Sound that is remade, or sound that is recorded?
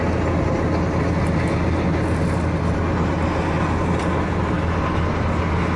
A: recorded